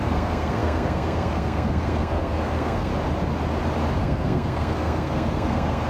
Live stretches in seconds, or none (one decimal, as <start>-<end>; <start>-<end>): 2.9-4.0